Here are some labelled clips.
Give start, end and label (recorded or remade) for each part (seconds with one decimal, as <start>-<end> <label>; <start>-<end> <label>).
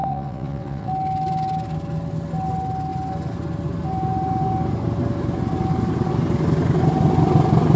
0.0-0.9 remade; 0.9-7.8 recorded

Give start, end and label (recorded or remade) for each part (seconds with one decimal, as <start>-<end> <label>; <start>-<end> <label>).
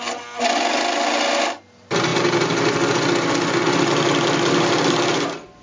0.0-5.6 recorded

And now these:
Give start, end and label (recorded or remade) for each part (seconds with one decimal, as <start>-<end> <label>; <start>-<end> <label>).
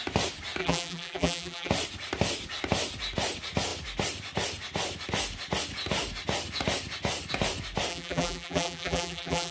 0.0-0.6 recorded; 0.6-1.7 remade; 1.7-7.9 recorded; 7.9-9.5 remade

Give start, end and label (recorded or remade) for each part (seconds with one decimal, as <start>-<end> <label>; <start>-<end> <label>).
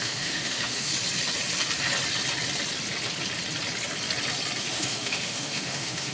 0.0-0.9 remade; 0.9-4.6 recorded; 4.6-6.1 remade